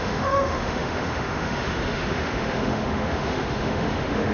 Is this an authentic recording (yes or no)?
no